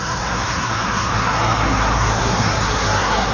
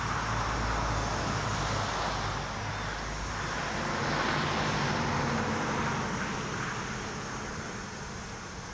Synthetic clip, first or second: first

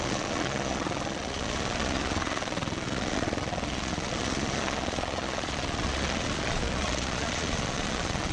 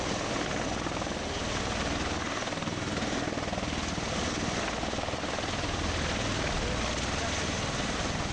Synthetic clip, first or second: first